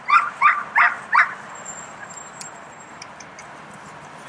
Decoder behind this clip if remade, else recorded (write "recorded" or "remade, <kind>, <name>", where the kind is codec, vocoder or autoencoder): recorded